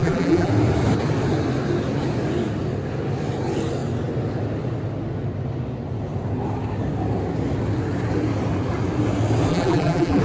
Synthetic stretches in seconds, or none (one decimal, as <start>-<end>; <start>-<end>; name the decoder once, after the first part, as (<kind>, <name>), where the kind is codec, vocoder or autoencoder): 0.0-0.5 (vocoder, BigVGAN v2); 9.5-10.2